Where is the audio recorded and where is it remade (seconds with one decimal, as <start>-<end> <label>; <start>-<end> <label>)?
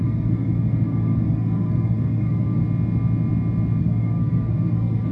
0.0-2.6 remade; 2.6-3.8 recorded; 3.8-5.1 remade